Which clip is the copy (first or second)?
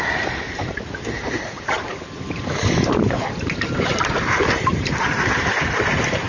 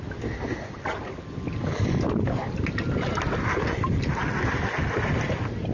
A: first